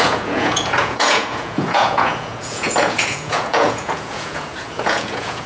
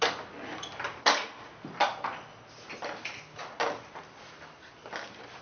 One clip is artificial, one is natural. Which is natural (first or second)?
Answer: second